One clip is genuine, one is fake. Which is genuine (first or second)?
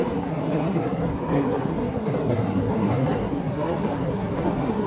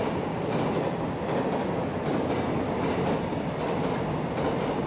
second